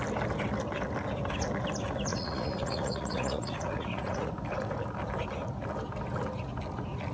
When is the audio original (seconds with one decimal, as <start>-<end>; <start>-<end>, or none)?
0.0-2.1; 4.3-7.1